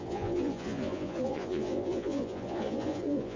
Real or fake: fake